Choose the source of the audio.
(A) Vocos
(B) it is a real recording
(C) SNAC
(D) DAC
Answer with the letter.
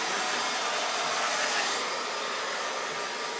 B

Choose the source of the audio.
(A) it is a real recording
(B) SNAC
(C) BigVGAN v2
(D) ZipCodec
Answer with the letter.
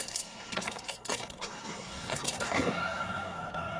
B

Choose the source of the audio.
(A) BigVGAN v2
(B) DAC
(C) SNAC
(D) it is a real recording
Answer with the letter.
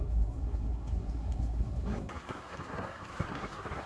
C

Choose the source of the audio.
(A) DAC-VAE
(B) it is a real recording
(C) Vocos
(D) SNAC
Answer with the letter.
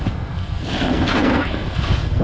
D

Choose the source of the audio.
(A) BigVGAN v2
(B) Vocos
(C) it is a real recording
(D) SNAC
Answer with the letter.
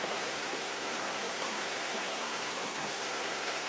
D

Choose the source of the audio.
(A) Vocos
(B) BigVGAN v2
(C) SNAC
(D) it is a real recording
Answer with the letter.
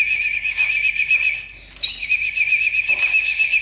D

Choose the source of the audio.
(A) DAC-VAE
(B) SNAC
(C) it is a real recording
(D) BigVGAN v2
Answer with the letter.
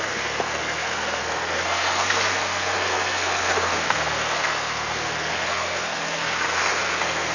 B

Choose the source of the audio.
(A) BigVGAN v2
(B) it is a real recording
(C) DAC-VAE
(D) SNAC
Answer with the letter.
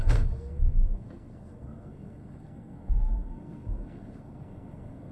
D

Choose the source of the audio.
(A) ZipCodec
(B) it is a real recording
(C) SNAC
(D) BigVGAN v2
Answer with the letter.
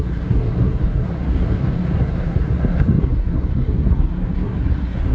C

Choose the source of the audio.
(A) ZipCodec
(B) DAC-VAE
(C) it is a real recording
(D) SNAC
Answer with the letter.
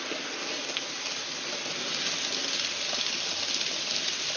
C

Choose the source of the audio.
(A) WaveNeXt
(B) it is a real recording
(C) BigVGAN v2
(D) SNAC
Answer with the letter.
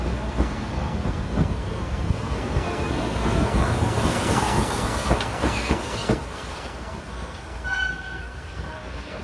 D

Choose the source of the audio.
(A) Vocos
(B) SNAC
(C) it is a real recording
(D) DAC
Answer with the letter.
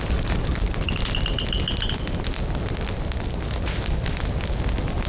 C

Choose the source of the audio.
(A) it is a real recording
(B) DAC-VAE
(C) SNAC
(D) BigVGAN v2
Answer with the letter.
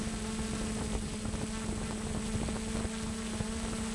A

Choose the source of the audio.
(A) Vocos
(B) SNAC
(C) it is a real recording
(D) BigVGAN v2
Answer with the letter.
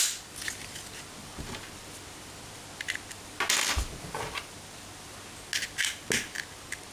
C